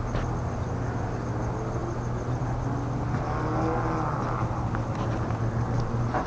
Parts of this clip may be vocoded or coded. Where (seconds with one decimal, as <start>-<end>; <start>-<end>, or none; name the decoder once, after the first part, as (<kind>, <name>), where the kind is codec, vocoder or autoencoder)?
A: none